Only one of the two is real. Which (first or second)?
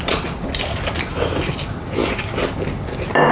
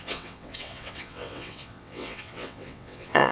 first